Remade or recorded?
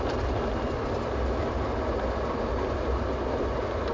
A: recorded